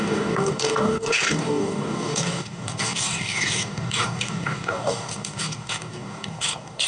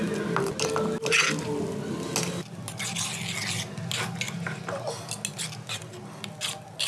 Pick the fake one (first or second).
first